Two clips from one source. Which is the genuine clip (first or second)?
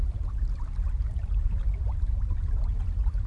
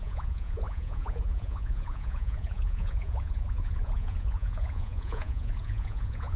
first